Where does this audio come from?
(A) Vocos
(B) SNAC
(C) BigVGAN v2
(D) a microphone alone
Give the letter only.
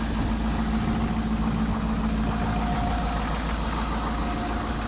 D